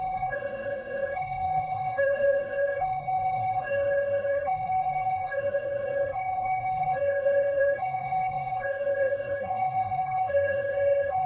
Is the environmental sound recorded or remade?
remade